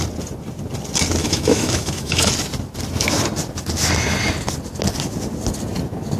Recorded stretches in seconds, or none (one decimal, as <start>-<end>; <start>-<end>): 0.0-1.2; 2.3-6.2